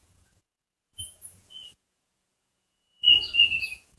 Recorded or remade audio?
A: remade